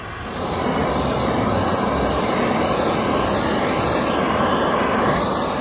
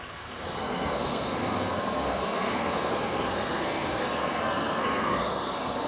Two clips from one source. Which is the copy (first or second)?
second